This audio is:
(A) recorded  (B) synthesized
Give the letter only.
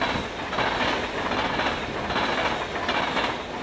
A